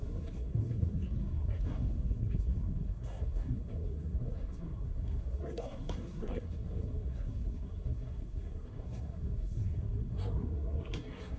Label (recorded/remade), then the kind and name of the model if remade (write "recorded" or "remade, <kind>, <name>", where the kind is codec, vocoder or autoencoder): remade, codec, SNAC